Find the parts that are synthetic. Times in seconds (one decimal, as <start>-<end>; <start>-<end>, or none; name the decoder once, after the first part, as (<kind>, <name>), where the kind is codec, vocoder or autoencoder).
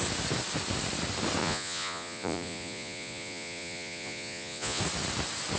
1.4-4.8 (vocoder, Vocos)